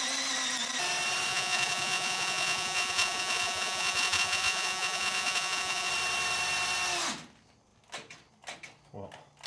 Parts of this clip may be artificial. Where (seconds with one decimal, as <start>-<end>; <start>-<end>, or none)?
1.3-5.9